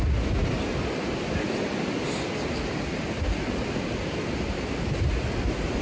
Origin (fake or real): real